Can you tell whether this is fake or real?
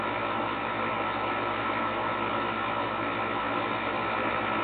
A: real